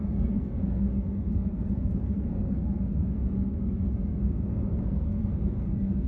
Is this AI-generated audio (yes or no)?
yes